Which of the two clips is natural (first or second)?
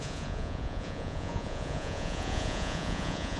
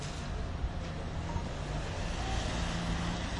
second